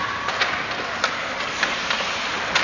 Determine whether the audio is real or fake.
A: fake